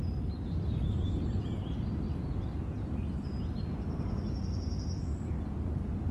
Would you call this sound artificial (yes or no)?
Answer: no